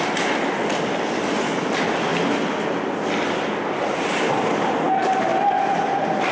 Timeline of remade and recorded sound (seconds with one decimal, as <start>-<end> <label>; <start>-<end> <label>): 0.0-6.3 recorded